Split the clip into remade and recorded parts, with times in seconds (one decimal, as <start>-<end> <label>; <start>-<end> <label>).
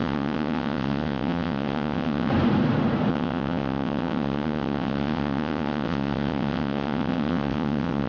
0.0-2.3 remade; 2.3-3.1 recorded; 3.1-8.1 remade